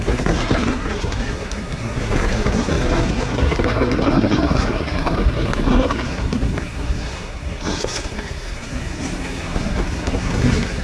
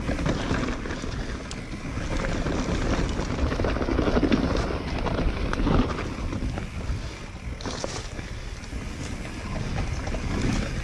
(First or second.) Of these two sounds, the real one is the second